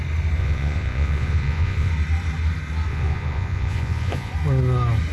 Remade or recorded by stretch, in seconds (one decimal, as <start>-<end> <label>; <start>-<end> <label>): 0.0-0.4 recorded; 0.4-1.9 remade; 1.9-2.9 recorded; 2.9-4.3 remade; 4.3-5.1 recorded